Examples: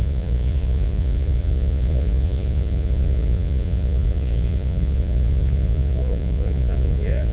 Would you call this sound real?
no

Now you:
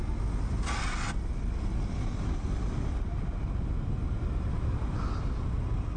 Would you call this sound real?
yes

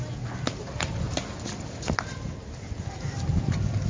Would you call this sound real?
yes